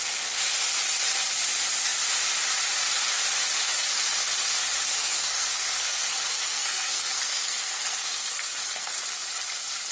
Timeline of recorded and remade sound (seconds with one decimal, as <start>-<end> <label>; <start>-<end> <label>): 0.0-5.0 recorded; 5.0-8.9 remade; 8.9-9.9 recorded